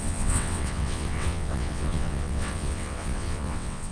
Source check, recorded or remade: remade